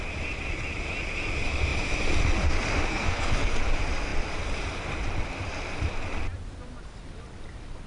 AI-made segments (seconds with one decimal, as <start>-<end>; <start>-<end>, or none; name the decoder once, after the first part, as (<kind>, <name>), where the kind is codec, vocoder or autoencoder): 2.9-3.6 (codec, SNAC)